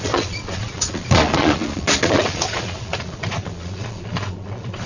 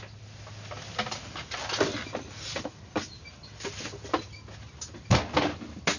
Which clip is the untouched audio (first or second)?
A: second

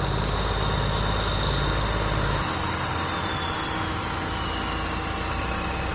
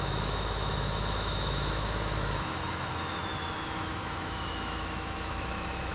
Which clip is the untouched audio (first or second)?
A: first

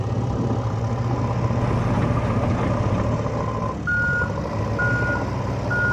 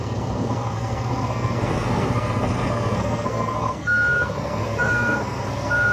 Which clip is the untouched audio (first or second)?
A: first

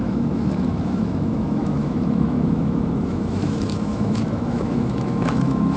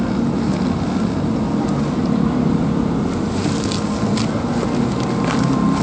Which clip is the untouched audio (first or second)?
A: second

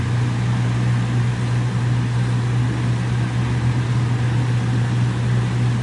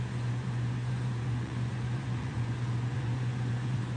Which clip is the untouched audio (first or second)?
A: first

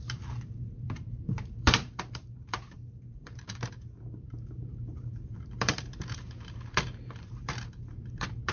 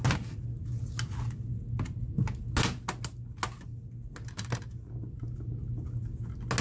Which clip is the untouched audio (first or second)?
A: second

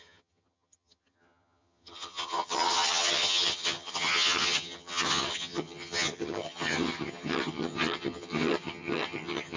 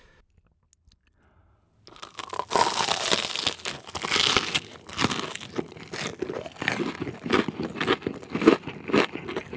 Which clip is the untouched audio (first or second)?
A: second